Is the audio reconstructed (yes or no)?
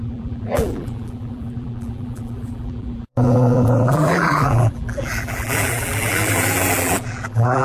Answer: yes